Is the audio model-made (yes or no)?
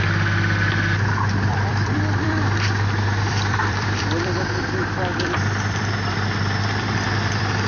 yes